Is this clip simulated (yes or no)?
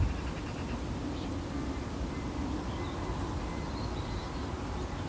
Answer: no